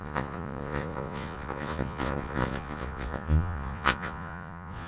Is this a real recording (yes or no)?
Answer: no